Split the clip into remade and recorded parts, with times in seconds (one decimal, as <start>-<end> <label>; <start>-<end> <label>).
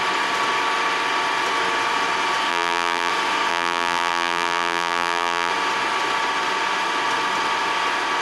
0.0-2.5 recorded; 2.5-3.1 remade; 3.1-3.5 recorded; 3.5-5.5 remade; 5.5-8.2 recorded